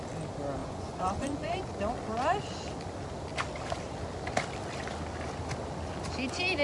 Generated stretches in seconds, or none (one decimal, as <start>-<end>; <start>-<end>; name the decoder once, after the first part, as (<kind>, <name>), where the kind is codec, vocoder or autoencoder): 0.6-1.6 (vocoder, Vocos)